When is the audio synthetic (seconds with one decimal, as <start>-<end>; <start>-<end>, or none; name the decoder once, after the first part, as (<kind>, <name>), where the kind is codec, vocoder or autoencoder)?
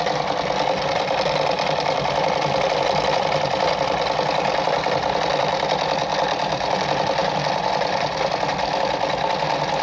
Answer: none